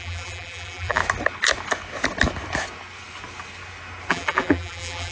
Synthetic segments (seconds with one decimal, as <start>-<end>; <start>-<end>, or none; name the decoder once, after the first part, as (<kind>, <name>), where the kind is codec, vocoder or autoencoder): 0.0-1.0 (vocoder, BigVGAN v2); 4.1-5.1